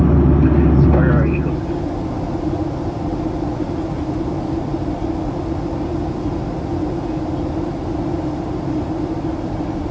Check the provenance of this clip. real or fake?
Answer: real